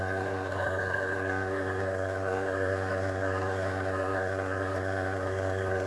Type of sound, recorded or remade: remade